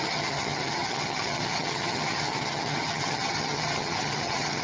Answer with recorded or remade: remade